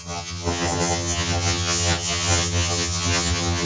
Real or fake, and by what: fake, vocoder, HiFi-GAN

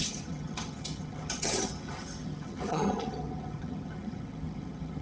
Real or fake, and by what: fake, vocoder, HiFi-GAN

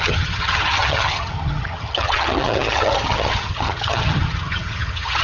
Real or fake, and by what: fake, vocoder, HiFi-GAN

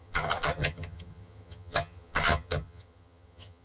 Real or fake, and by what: fake, vocoder, HiFi-GAN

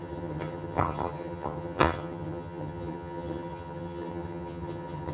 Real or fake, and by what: fake, vocoder, HiFi-GAN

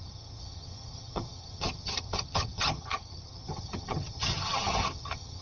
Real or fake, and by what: fake, vocoder, HiFi-GAN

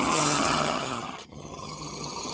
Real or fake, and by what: fake, vocoder, HiFi-GAN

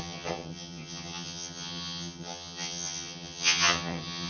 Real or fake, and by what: fake, vocoder, HiFi-GAN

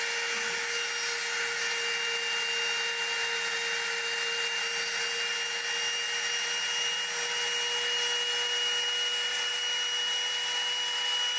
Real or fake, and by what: real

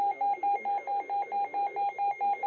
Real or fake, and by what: real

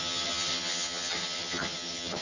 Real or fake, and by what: fake, vocoder, HiFi-GAN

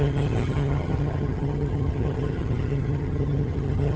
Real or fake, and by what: fake, vocoder, HiFi-GAN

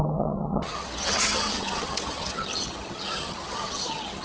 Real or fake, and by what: fake, vocoder, HiFi-GAN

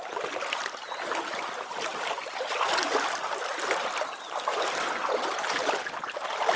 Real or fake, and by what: real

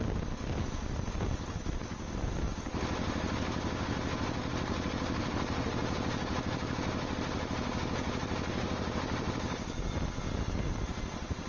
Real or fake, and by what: real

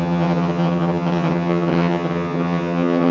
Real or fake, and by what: fake, vocoder, HiFi-GAN